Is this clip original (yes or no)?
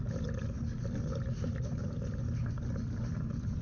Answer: yes